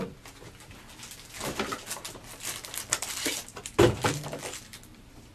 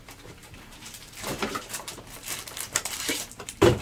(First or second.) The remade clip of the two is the second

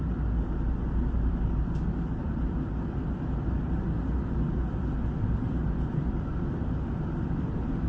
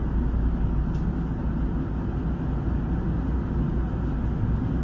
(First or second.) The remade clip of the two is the first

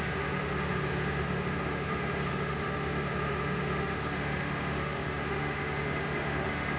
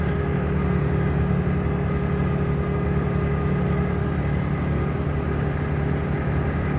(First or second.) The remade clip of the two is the first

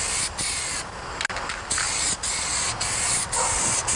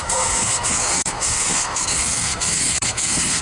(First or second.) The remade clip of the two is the second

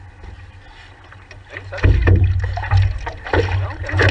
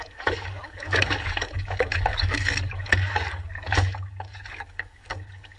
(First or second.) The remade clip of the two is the second